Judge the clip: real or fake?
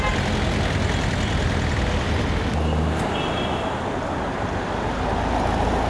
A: real